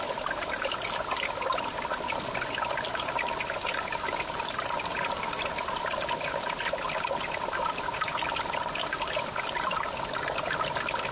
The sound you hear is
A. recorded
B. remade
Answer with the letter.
A